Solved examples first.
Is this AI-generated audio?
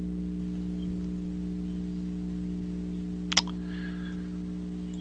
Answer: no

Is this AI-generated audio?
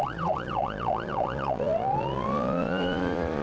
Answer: yes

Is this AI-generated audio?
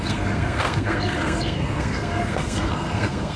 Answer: yes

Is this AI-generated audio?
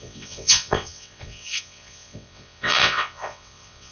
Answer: yes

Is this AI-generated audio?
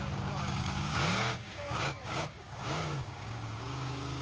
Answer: yes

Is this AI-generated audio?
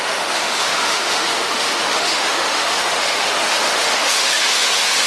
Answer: yes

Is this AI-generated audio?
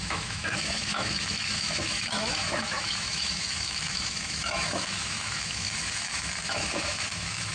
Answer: yes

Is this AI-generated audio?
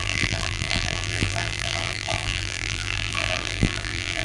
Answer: yes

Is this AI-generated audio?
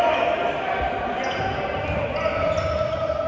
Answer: no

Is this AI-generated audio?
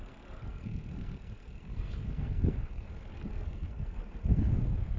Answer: yes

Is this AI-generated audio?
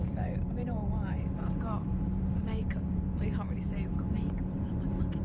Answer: yes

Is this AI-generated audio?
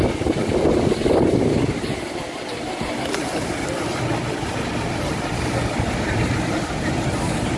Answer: yes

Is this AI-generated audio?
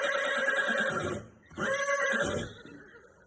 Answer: no